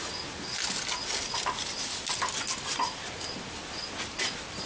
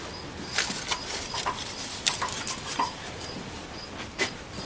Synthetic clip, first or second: second